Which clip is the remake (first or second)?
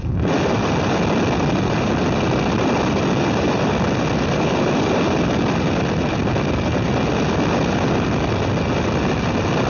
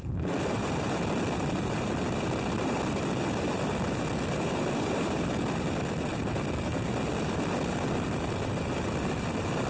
second